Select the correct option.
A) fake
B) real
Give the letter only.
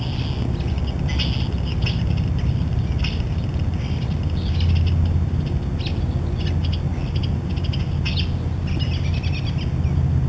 B